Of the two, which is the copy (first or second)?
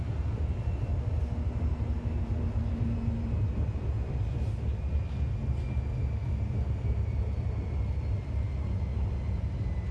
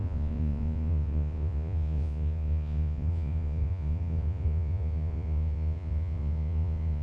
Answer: second